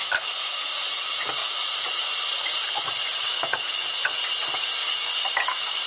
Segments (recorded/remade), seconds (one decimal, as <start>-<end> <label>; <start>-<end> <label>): 0.0-1.4 recorded; 1.4-3.7 remade; 3.7-5.9 recorded